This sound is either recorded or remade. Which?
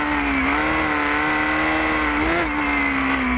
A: recorded